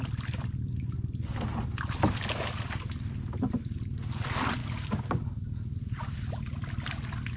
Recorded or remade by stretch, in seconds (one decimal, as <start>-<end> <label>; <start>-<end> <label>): 0.0-4.6 recorded; 4.6-5.2 remade; 5.2-7.4 recorded